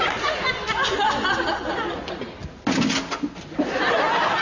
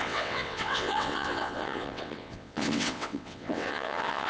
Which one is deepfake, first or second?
second